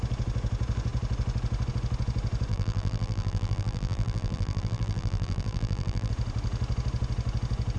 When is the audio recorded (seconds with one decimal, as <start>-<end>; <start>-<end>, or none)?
0.0-2.5; 6.1-7.8